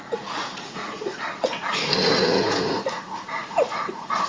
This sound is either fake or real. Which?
fake